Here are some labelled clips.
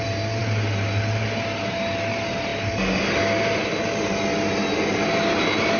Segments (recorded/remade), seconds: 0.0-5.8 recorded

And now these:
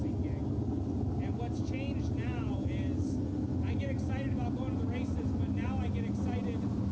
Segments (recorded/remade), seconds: 0.0-6.9 recorded

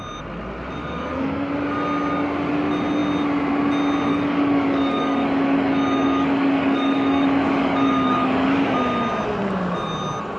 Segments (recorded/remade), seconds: 0.0-0.8 recorded; 0.8-1.5 remade; 1.5-4.1 recorded; 4.1-8.5 remade; 8.5-10.4 recorded

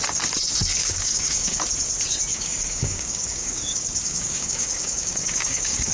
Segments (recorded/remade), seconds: 0.0-0.8 recorded; 0.8-1.6 remade; 1.6-2.3 recorded; 2.3-5.9 remade

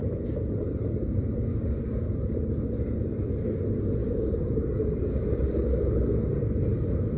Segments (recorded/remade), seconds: 0.0-2.5 remade; 2.5-4.0 recorded; 4.0-6.2 remade; 6.2-7.2 recorded

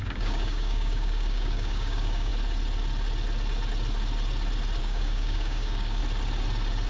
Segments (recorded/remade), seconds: 0.0-2.3 remade; 2.3-4.8 recorded; 4.8-6.0 remade; 6.0-6.9 recorded